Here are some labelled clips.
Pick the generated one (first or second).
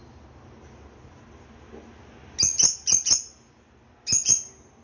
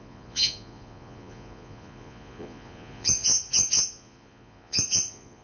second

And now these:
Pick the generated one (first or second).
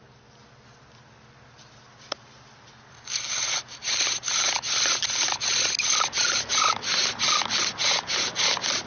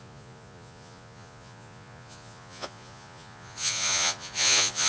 second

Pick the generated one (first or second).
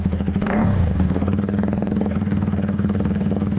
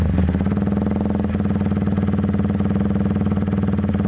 first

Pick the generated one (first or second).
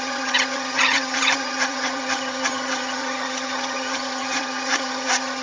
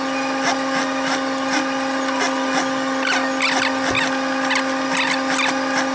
first